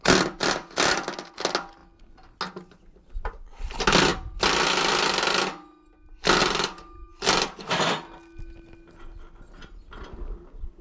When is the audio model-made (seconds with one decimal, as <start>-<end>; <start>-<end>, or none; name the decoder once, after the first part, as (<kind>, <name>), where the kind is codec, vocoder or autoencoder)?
none